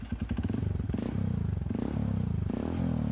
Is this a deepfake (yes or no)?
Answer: no